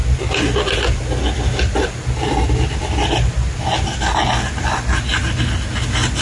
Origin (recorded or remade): recorded